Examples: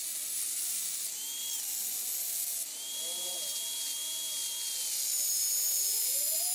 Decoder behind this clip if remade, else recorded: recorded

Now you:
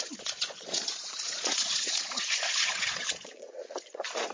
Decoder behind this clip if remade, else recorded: remade, vocoder, Vocos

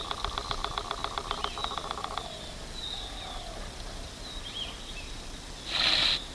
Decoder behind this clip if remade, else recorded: recorded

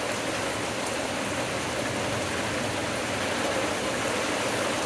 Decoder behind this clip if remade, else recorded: recorded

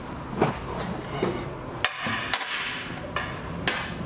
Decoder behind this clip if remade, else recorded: recorded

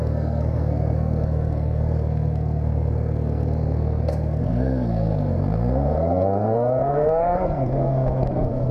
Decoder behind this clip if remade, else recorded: remade, codec, SNAC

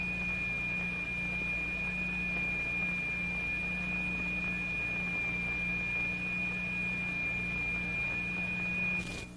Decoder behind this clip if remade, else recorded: recorded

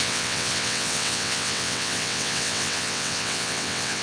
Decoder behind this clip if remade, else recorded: remade, vocoder, WaveNeXt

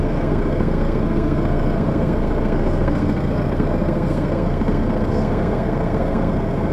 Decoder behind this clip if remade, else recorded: remade, codec, SNAC